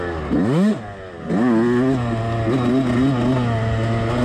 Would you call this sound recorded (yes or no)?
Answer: yes